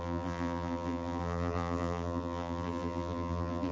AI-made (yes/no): yes